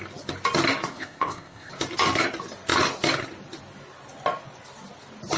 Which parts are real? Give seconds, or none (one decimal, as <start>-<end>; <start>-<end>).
0.0-0.9; 1.7-5.4